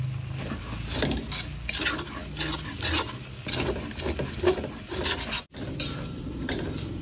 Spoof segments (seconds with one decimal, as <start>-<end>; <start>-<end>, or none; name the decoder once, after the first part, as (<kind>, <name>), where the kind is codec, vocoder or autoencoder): none